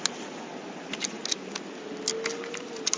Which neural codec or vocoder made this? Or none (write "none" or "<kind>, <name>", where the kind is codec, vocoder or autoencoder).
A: none